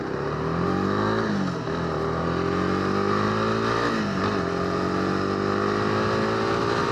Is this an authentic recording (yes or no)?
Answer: yes